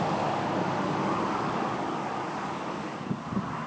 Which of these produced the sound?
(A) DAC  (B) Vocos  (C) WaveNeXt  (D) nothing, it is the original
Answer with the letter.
A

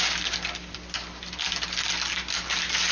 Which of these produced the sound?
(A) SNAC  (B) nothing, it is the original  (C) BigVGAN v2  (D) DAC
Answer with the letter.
B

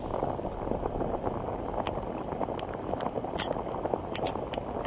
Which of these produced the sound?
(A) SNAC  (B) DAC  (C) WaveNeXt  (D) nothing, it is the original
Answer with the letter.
D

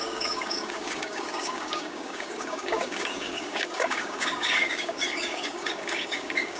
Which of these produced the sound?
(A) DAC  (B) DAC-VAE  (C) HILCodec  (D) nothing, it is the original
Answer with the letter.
A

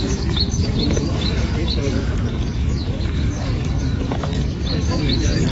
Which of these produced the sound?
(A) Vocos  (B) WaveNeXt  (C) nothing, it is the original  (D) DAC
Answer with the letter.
D